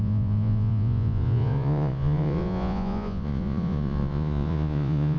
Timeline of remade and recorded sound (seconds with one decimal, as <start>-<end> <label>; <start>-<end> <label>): 0.0-5.2 remade